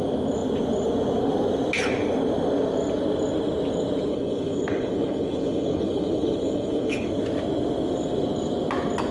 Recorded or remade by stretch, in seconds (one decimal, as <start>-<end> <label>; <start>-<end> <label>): 0.0-4.1 recorded; 4.1-7.1 remade; 7.1-9.1 recorded